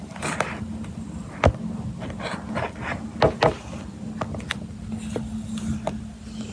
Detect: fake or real real